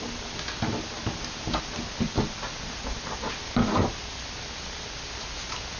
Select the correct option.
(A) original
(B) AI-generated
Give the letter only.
A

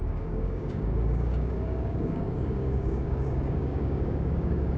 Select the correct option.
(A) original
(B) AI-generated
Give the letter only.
B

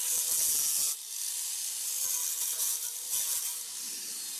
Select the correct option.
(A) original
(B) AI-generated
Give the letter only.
A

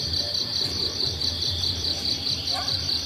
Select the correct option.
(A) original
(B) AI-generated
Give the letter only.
A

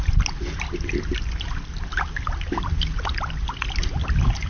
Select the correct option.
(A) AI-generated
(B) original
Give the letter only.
B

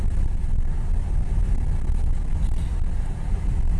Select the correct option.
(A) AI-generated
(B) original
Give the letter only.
B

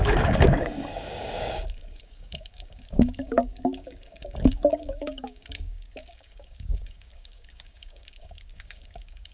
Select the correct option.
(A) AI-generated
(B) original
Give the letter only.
A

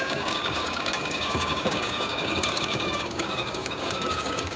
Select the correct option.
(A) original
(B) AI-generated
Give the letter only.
B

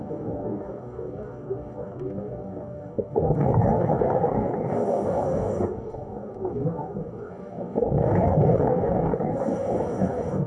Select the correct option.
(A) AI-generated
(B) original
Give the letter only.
A